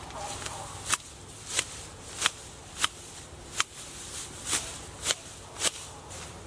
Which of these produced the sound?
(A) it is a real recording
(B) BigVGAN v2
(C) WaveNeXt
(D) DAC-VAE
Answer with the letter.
B